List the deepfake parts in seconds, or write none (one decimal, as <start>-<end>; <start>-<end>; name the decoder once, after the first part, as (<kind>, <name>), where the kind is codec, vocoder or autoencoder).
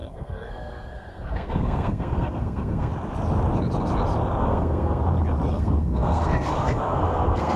0.0-2.9 (codec, SNAC); 4.4-5.0; 5.5-7.6